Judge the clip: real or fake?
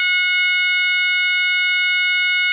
real